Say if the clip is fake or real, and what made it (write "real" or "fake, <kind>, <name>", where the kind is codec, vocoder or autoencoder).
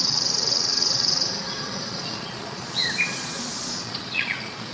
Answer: fake, vocoder, Vocos